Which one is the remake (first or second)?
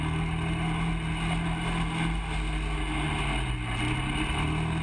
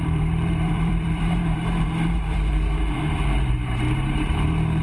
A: second